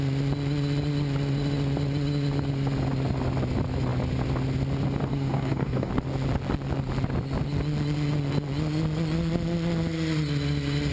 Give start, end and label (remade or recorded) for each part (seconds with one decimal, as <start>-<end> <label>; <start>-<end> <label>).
0.0-5.1 recorded; 5.1-5.9 remade; 5.9-10.9 recorded